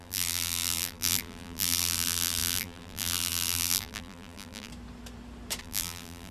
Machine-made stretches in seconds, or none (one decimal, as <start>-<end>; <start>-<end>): 0.0-4.7; 5.6-6.3